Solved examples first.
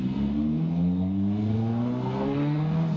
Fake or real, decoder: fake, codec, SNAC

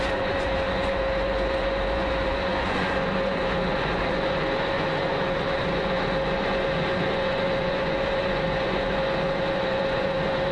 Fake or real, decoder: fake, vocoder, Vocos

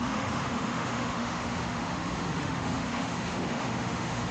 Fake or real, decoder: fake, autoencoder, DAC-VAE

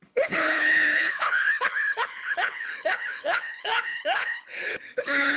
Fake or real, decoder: fake, codec, HILCodec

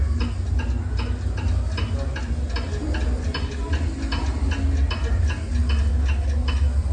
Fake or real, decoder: real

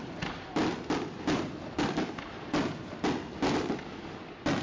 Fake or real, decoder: real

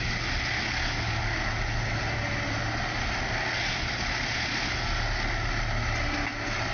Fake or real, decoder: real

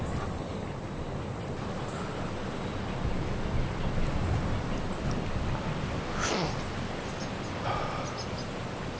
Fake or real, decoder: real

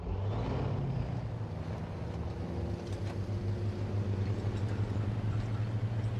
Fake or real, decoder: real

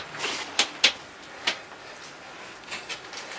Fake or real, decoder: real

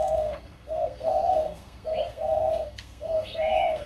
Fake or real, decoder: fake, codec, SNAC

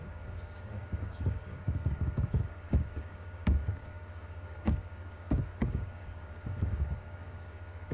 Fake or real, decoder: fake, codec, DAC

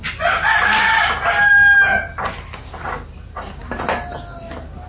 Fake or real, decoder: real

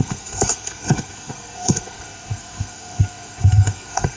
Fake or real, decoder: fake, codec, SNAC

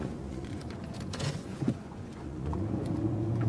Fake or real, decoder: fake, vocoder, Vocos